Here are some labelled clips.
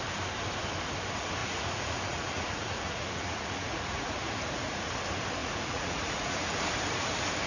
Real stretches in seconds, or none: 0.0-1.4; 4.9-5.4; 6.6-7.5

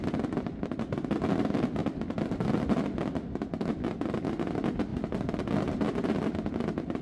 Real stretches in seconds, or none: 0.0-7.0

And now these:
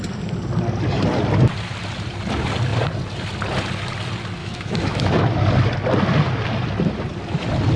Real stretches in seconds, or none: 0.0-4.4; 5.1-7.8

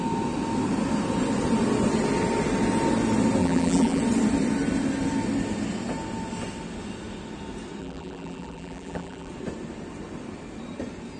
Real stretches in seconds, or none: 0.0-3.4; 4.0-7.8; 9.3-11.2

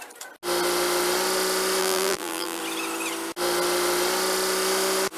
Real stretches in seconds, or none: 0.0-1.8; 2.6-5.2

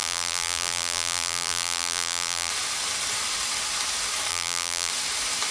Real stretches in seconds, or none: 2.5-4.3; 4.9-5.5